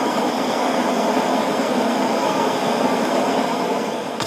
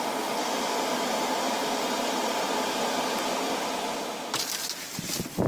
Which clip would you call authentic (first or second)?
second